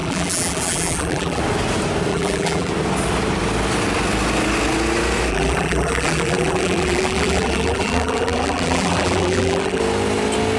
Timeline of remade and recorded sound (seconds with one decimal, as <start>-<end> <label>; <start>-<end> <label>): 0.0-1.4 remade; 1.4-2.1 recorded; 2.1-2.7 remade; 2.7-5.3 recorded; 5.3-9.8 remade; 9.8-10.6 recorded